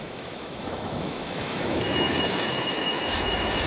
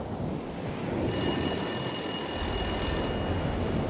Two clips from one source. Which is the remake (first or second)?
first